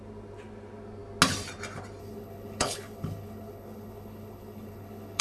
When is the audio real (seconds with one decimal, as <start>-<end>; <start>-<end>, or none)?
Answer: 0.0-2.0